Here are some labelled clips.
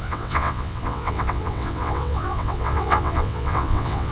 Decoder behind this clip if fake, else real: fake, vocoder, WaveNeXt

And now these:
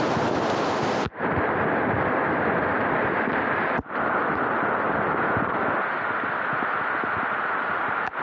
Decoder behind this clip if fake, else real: real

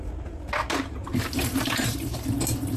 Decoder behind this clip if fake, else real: fake, vocoder, BigVGAN v2